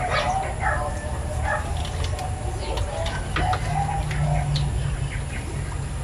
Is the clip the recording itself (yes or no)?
yes